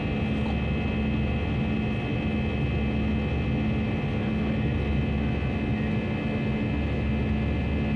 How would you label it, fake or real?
real